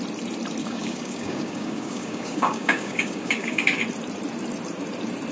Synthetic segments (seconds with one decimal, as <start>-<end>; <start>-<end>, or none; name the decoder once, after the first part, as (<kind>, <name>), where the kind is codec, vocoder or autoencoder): 0.6-3.8 (codec, DAC)